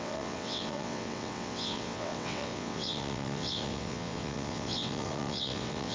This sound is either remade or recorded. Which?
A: remade